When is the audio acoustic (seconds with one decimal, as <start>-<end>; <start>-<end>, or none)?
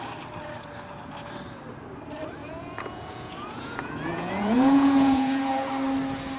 0.0-2.4; 5.7-6.4